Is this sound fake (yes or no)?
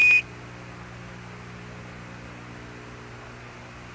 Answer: no